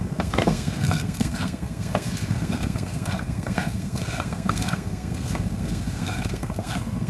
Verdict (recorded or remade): remade